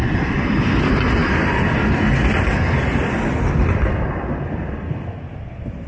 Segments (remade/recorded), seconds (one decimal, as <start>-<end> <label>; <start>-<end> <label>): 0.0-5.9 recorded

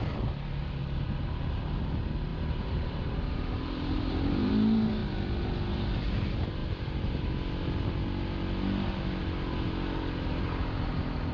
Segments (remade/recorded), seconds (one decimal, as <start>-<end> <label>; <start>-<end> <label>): 0.0-2.3 recorded; 2.3-4.5 remade; 4.5-11.3 recorded

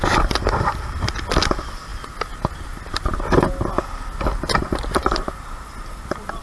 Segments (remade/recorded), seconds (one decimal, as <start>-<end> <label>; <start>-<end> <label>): 0.0-6.4 recorded